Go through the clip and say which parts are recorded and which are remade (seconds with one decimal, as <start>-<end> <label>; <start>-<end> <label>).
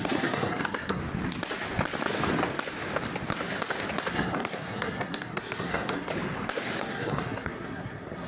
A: 0.0-1.0 remade; 1.0-4.1 recorded; 4.1-6.1 remade; 6.1-6.8 recorded; 6.8-8.3 remade